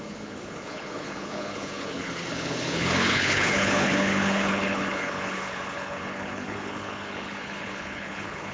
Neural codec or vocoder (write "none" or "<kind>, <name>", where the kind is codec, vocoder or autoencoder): codec, HILCodec